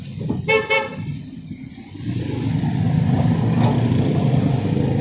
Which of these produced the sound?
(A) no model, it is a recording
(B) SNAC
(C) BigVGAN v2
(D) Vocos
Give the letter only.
A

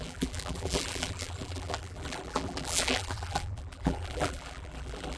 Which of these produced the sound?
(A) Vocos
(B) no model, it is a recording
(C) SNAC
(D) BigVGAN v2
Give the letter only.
D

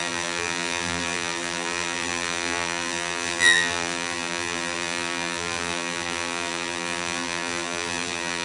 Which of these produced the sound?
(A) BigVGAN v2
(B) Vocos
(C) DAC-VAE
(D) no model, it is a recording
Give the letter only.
A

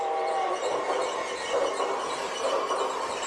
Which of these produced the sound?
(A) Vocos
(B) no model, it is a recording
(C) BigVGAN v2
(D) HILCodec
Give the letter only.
C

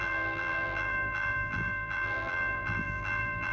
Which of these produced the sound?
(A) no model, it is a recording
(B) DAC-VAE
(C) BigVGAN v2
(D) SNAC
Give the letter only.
C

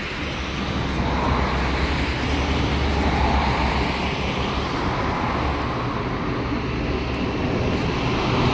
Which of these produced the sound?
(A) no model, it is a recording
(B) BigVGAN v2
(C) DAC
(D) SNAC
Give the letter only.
A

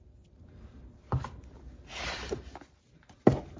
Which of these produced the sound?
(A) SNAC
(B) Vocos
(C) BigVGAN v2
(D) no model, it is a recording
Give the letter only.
C